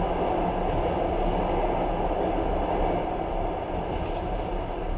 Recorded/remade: recorded